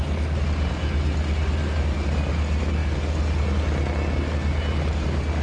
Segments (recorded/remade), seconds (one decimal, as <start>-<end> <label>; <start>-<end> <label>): 0.0-5.4 recorded